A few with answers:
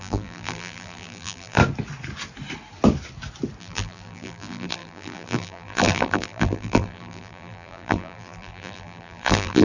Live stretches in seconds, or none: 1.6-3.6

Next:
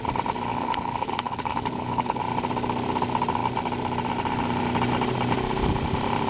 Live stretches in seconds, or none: 0.0-0.5; 2.2-6.3

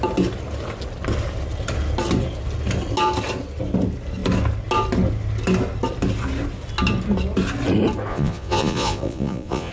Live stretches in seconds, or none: 0.0-8.1

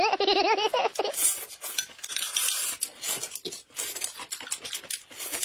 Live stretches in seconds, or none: 0.0-5.4

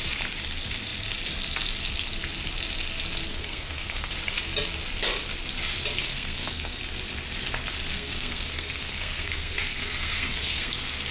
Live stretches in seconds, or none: 0.0-3.3; 4.1-6.0; 6.8-7.9; 10.7-11.1

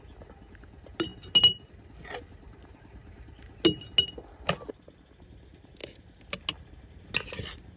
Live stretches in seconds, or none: 0.0-7.8